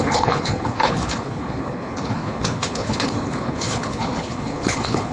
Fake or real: fake